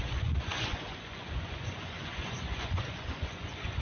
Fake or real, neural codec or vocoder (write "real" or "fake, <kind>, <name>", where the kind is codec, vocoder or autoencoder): fake, vocoder, Vocos